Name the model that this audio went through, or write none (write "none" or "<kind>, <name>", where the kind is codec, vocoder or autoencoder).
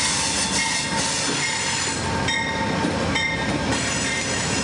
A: none